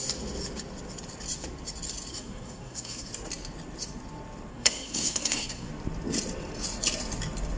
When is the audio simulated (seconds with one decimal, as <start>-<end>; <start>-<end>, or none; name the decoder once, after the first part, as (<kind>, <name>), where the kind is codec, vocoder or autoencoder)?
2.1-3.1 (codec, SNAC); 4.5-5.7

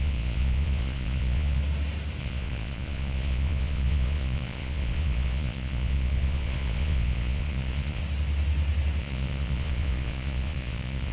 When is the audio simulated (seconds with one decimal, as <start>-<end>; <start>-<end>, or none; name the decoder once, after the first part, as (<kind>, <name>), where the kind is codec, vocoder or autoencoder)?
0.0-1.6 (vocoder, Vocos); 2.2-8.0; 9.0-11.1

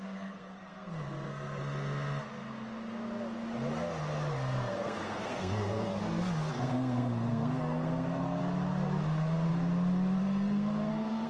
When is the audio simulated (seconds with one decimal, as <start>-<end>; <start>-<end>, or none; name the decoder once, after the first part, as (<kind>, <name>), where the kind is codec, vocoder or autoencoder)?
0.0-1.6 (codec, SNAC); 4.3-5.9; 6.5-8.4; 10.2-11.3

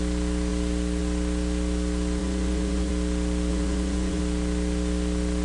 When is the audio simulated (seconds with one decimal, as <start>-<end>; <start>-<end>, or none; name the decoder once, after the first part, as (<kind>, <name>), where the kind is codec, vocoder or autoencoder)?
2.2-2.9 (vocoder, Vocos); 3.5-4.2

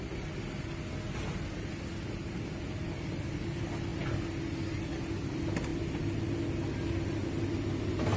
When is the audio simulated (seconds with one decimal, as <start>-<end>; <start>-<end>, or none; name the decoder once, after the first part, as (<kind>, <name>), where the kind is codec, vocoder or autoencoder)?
none

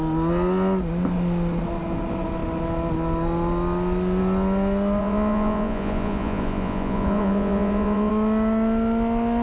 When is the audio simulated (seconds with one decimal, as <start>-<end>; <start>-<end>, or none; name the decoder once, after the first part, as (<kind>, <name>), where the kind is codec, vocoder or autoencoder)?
5.0-8.1 (vocoder, Vocos)